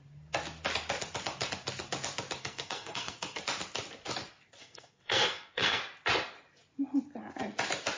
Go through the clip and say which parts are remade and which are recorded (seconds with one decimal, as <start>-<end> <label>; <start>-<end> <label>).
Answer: 0.0-2.4 recorded; 2.4-3.4 remade; 3.4-4.6 recorded; 4.6-5.8 remade; 5.8-8.0 recorded